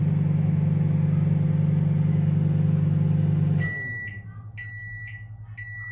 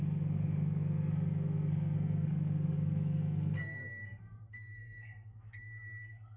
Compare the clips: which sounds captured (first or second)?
first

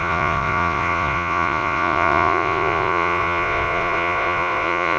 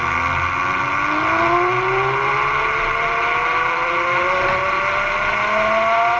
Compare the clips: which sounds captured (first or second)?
second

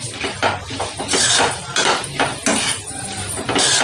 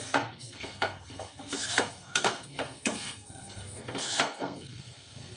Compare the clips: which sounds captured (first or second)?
first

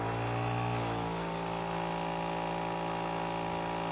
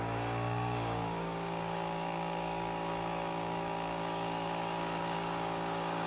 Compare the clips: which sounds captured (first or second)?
first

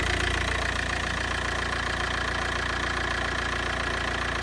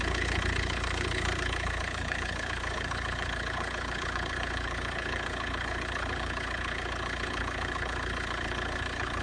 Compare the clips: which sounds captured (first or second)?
first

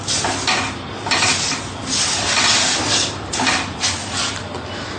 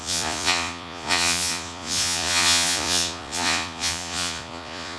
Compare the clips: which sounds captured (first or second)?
first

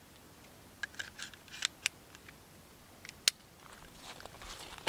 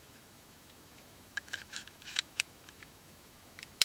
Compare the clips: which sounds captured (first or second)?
first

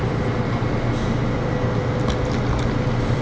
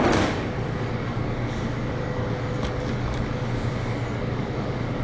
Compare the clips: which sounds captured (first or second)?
first